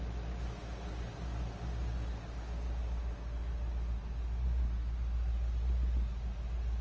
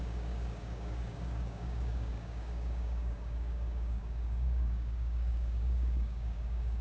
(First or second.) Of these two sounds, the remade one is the second